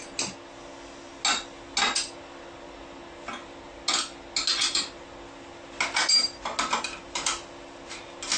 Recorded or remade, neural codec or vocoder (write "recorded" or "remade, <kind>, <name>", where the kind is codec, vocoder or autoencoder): recorded